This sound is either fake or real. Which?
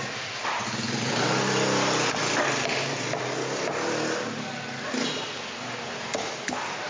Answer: real